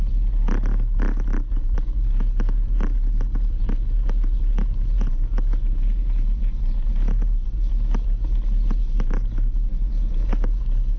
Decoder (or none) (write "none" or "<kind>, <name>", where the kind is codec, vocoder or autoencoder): none